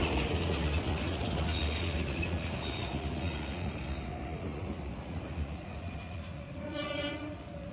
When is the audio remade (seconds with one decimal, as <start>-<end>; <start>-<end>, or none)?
0.0-7.7